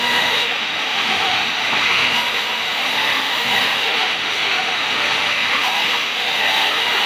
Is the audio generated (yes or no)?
yes